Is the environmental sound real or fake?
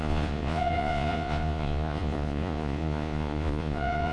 fake